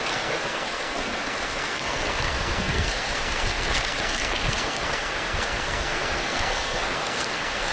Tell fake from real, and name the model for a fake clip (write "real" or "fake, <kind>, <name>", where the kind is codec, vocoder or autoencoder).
fake, codec, SNAC